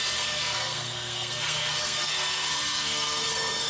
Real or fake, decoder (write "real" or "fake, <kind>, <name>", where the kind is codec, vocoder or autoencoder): fake, codec, SNAC